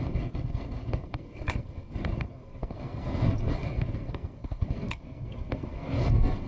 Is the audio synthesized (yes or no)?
yes